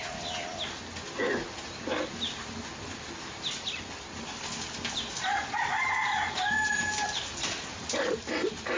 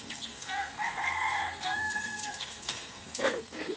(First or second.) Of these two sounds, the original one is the first